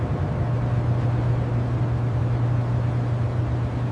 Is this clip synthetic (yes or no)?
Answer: yes